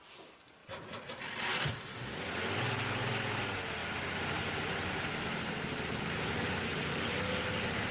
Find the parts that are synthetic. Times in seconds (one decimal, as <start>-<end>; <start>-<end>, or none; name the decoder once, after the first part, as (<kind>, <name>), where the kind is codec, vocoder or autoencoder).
none